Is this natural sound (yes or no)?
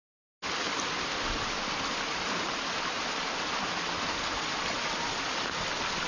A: yes